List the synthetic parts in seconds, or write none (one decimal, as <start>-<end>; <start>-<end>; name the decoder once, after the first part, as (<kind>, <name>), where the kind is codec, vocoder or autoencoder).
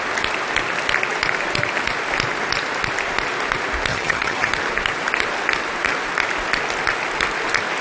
3.9-4.5 (vocoder, HiFi-GAN)